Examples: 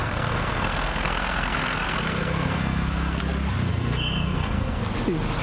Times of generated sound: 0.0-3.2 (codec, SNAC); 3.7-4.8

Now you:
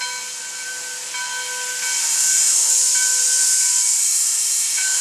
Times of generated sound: 2.0-2.7 (autoencoder, DAC-VAE); 4.0-5.0